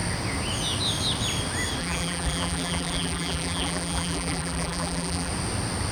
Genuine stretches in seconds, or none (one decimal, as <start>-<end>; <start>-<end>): 0.0-1.8; 5.3-5.9